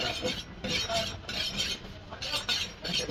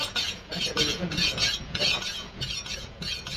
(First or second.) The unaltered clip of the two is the first